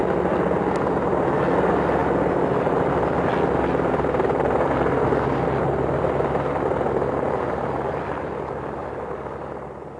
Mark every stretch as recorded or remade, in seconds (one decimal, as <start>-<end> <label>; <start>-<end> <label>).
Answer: 0.0-10.0 recorded